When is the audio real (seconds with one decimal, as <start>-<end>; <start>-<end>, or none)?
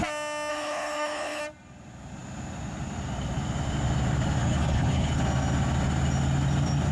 0.0-0.5; 1.4-4.4; 5.2-6.9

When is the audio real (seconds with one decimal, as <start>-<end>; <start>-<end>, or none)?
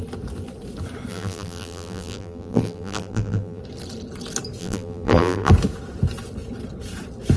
0.0-1.1; 3.6-4.6; 5.5-7.4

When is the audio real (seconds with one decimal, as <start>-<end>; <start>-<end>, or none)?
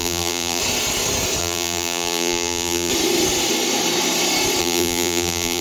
0.6-1.4; 2.9-4.6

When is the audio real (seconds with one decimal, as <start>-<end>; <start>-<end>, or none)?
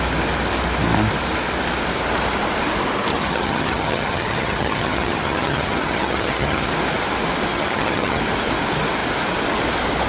0.0-3.1; 6.7-7.5; 8.2-10.1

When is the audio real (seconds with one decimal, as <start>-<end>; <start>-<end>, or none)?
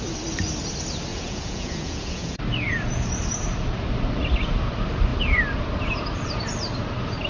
0.0-1.1; 2.4-7.3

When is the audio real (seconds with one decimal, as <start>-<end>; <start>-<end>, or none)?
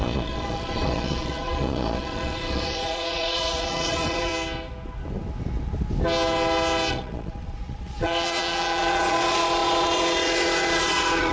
4.3-6.9